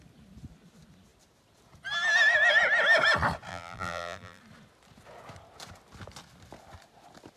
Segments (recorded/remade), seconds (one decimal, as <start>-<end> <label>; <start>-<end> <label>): 0.0-3.5 recorded; 3.5-4.4 remade; 4.4-7.4 recorded